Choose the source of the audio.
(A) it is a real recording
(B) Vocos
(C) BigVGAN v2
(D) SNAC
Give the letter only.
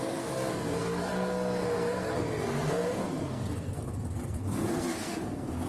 D